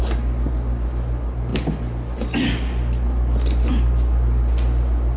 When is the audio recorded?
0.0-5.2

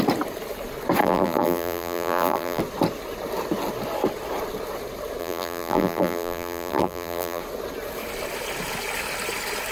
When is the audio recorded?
0.0-1.0; 2.6-5.2; 7.4-9.7

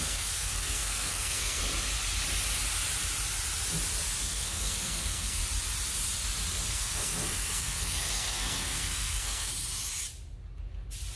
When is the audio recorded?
1.6-4.2; 5.4-6.7; 9.5-11.2

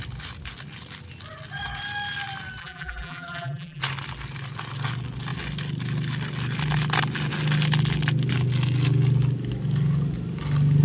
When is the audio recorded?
0.0-2.6; 3.8-10.8

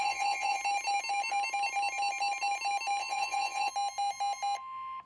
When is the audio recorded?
0.6-3.0; 3.7-5.1

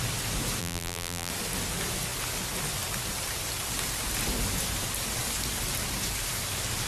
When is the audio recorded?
0.0-0.6; 1.3-6.9

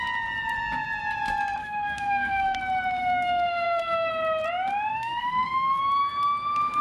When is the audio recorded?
0.0-1.6; 2.6-3.0; 4.1-4.9; 5.8-6.8

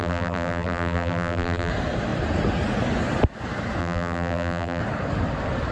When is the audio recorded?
1.7-3.8; 4.8-5.7